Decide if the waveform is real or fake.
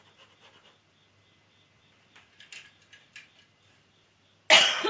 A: real